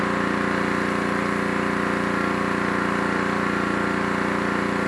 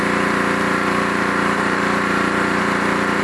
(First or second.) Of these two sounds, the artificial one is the second